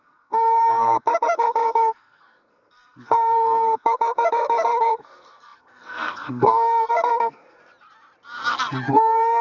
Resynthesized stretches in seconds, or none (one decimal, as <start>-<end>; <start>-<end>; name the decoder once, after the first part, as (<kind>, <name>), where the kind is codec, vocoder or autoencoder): 0.0-7.6 (codec, SNAC); 8.5-9.4